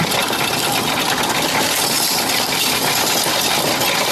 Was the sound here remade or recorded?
recorded